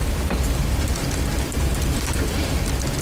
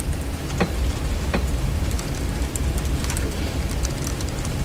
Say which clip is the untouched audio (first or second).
first